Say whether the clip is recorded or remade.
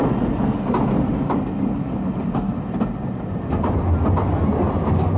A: recorded